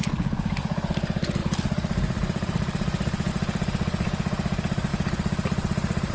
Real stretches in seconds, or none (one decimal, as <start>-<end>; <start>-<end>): 0.0-6.1